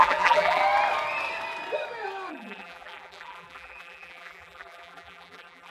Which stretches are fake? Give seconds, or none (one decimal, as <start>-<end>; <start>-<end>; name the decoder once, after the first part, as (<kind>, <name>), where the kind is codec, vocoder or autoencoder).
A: 0.0-0.6 (vocoder, BigVGAN v2); 2.3-5.7